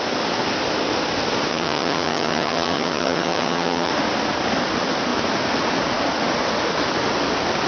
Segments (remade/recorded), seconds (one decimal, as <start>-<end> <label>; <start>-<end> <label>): 0.0-1.5 recorded; 1.5-3.9 remade; 3.9-7.7 recorded